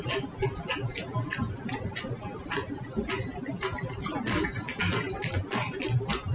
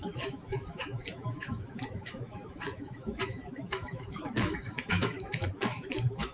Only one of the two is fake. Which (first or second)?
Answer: second